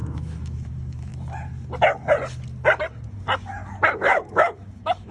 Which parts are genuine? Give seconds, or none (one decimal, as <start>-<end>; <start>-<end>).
1.1-3.9